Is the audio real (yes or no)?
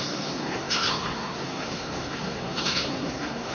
no